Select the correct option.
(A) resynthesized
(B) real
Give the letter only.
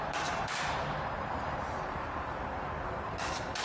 A